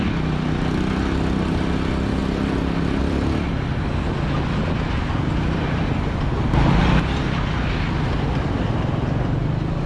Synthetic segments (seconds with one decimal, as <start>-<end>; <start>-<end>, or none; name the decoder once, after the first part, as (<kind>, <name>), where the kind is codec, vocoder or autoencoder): 5.6-6.7 (vocoder, BigVGAN v2)